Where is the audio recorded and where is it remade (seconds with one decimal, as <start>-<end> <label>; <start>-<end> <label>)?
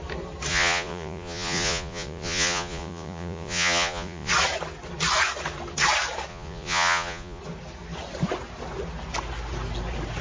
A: 0.0-0.5 recorded; 0.5-4.3 remade; 4.3-6.3 recorded; 6.3-7.4 remade; 7.4-10.2 recorded